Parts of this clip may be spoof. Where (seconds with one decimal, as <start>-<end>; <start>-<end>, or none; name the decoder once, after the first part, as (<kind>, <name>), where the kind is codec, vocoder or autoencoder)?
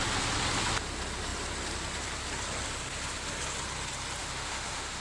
4.2-5.0 (autoencoder, DAC-VAE)